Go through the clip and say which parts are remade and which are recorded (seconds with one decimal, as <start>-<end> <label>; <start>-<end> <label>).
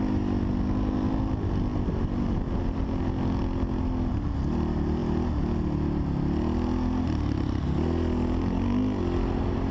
0.0-9.7 recorded